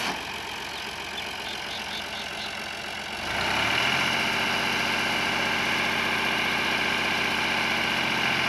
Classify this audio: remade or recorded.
recorded